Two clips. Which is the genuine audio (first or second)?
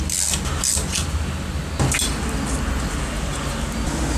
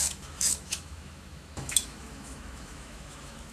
first